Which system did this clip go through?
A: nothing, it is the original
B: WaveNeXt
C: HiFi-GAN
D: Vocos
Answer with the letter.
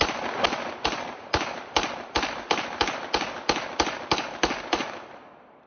A